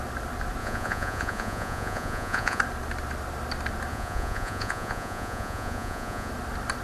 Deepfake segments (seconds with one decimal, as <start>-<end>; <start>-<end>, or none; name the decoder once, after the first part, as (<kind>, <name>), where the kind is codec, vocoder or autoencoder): 0.6-2.6 (vocoder, Vocos); 3.9-6.3